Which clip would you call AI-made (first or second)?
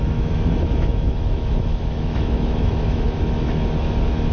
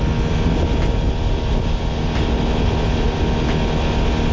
first